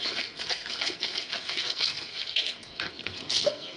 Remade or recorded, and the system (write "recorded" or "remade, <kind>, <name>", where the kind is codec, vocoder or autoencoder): remade, codec, SNAC